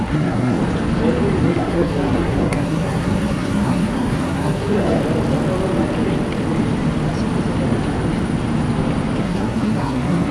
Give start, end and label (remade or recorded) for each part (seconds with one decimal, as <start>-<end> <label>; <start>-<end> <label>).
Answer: 0.0-0.6 remade; 0.6-1.4 recorded; 1.4-5.0 remade; 5.0-9.2 recorded; 9.2-10.3 remade